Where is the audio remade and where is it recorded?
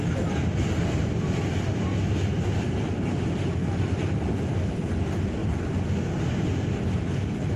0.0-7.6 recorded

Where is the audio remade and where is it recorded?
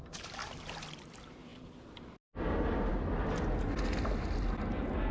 0.0-5.1 recorded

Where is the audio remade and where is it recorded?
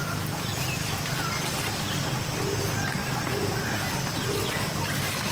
0.0-0.5 recorded; 0.5-2.0 remade; 2.0-3.0 recorded; 3.0-4.3 remade; 4.3-5.3 recorded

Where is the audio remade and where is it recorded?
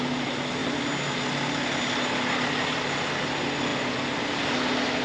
0.0-5.0 recorded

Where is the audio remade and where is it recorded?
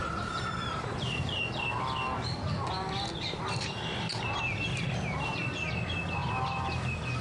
0.0-1.3 remade; 1.3-6.2 recorded; 6.2-7.2 remade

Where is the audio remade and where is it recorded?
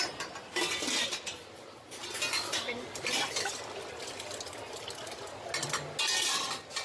0.0-6.8 recorded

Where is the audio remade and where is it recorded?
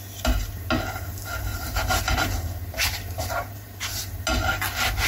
0.0-1.5 recorded; 1.5-4.0 remade; 4.0-5.1 recorded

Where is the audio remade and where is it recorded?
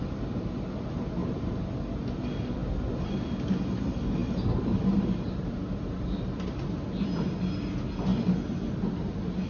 0.0-1.2 recorded; 1.2-1.7 remade; 1.7-4.2 recorded; 4.2-5.8 remade; 5.8-9.5 recorded